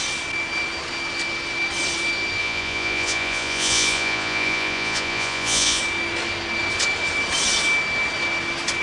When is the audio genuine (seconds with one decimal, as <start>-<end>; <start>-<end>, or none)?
0.0-2.4; 5.8-8.8